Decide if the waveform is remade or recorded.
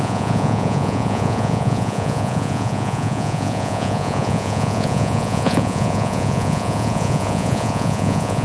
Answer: remade